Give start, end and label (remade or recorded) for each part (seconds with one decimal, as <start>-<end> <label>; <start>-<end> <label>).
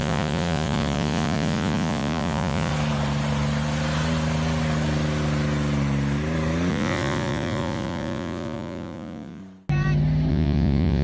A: 0.0-2.7 remade; 2.7-6.7 recorded; 6.7-9.4 remade; 9.4-10.3 recorded; 10.3-11.0 remade